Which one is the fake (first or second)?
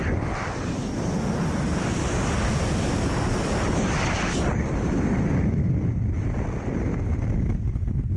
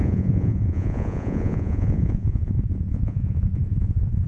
second